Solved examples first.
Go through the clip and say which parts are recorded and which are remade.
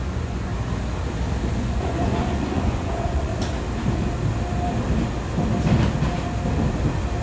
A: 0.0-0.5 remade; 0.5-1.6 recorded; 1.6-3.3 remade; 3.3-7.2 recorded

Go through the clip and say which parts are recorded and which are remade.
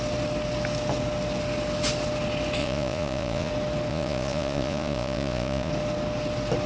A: 0.0-2.6 recorded; 2.6-3.5 remade; 3.5-3.9 recorded; 3.9-5.7 remade; 5.7-6.7 recorded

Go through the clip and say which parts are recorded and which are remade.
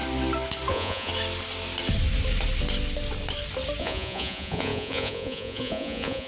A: 0.0-0.7 recorded; 0.7-1.1 remade; 1.1-3.8 recorded; 3.8-6.3 remade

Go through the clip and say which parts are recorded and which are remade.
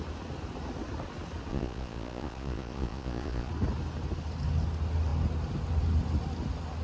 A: 0.0-1.5 recorded; 1.5-3.5 remade; 3.5-6.8 recorded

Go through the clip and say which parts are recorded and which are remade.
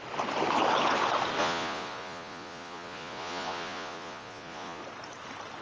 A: 0.0-1.4 recorded; 1.4-4.8 remade; 4.8-5.6 recorded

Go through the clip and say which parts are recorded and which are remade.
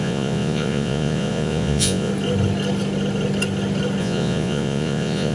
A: 0.0-2.1 remade; 2.1-4.0 recorded; 4.0-5.3 remade